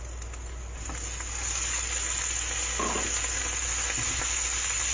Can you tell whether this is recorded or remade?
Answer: recorded